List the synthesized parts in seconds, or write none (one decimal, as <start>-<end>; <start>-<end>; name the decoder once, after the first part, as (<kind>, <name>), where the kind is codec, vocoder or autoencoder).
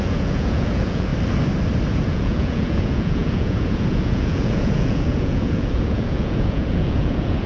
0.0-1.1 (vocoder, Vocos); 1.9-7.5